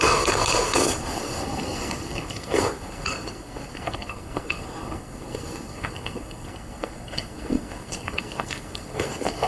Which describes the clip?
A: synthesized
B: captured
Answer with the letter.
A